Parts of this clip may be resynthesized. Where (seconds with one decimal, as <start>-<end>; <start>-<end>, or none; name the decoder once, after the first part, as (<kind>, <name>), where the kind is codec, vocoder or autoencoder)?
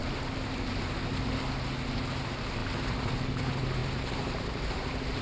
none